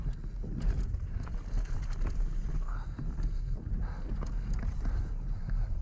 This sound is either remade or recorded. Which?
recorded